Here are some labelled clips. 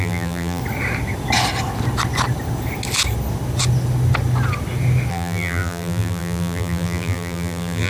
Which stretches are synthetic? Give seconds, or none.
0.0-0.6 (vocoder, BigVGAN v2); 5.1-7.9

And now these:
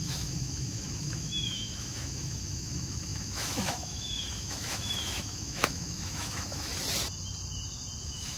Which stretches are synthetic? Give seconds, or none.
0.0-6.7 (autoencoder, DAC-VAE); 8.0-8.4

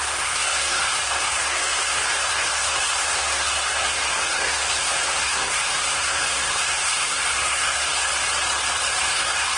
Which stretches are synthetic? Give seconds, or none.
0.0-8.1 (codec, SNAC); 9.0-9.6

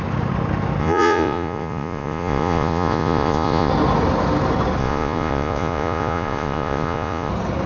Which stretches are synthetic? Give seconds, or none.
0.8-3.7 (vocoder, Vocos); 4.8-7.3

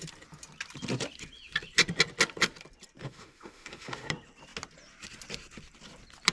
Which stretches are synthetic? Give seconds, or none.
3.0-4.1 (autoencoder, DAC-VAE)